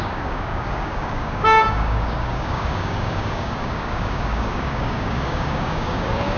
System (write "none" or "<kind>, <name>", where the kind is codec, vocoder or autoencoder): codec, DAC